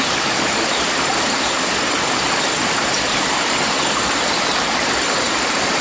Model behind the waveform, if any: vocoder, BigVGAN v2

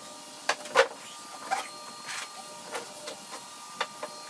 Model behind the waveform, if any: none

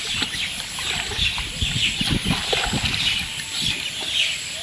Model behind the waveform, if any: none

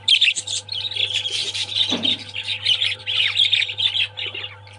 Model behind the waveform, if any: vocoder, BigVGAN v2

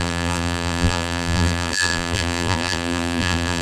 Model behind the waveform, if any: vocoder, BigVGAN v2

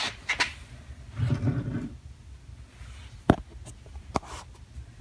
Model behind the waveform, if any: none